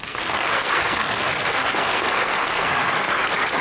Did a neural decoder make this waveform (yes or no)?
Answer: yes